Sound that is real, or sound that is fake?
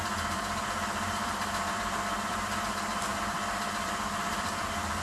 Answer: fake